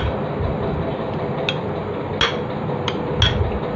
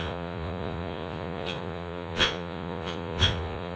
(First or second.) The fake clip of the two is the second